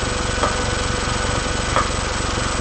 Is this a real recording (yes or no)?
yes